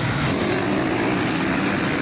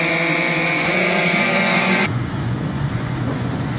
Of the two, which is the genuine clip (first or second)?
first